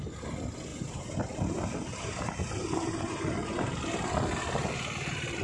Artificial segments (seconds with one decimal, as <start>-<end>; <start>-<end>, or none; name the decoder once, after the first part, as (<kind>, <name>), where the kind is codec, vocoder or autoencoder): 0.7-3.5 (vocoder, BigVGAN v2)